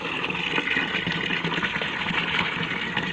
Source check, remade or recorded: recorded